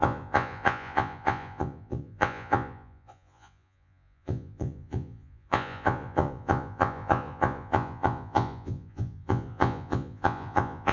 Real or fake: fake